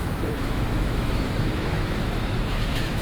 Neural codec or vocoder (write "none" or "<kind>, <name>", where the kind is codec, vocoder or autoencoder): autoencoder, DAC-VAE